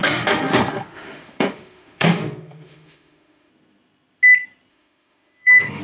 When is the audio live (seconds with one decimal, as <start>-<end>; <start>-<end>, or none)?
3.5-4.7